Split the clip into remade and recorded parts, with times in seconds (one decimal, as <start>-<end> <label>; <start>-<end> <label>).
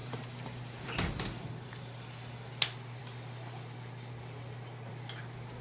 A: 0.0-1.8 remade; 1.8-5.6 recorded